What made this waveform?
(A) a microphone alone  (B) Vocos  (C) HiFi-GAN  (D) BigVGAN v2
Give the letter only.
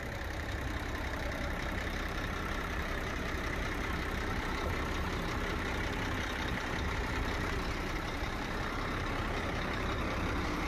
D